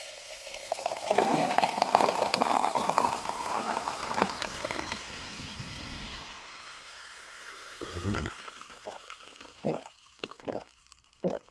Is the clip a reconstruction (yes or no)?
yes